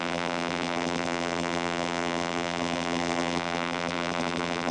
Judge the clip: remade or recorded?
remade